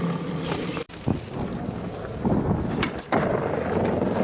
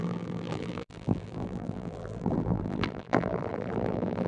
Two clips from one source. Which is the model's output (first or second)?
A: second